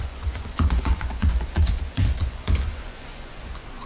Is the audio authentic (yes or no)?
no